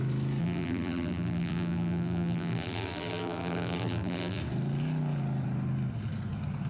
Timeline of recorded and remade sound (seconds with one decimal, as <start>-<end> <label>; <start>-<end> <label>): 0.0-0.4 recorded; 0.4-4.4 remade; 4.4-6.7 recorded